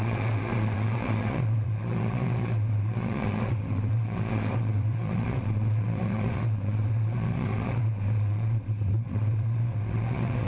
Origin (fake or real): fake